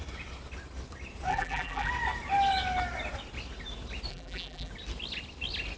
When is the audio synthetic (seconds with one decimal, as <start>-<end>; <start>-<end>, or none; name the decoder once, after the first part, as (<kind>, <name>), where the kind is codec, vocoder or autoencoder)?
1.3-1.9 (vocoder, BigVGAN v2); 4.1-4.7